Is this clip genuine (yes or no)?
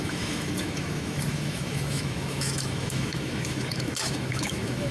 no